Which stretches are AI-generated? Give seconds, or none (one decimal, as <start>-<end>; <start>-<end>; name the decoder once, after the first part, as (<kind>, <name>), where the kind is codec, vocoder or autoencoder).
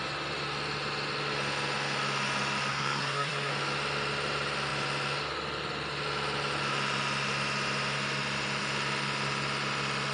2.7-3.5 (codec, SNAC)